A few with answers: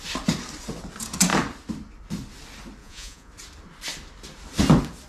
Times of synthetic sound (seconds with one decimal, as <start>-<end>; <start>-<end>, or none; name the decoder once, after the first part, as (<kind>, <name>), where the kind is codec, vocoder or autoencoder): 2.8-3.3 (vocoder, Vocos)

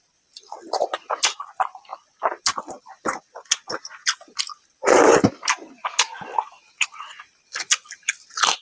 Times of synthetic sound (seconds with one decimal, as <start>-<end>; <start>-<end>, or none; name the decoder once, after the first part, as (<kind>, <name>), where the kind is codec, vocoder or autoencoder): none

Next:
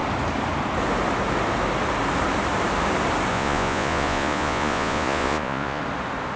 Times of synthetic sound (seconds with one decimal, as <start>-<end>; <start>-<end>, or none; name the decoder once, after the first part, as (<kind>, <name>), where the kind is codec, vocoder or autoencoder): 3.3-5.8 (vocoder, Vocos)